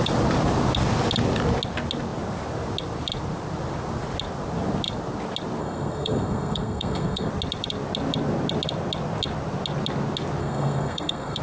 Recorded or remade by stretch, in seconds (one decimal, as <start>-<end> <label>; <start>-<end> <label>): 0.0-5.6 recorded; 5.6-7.3 remade; 7.3-10.4 recorded; 10.4-11.4 remade